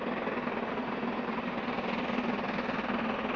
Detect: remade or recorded recorded